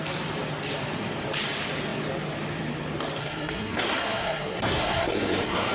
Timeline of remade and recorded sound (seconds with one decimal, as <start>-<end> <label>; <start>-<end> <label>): 0.0-3.2 recorded; 3.2-5.7 remade